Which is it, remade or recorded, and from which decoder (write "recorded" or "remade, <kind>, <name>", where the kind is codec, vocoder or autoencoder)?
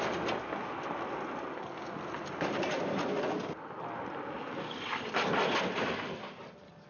recorded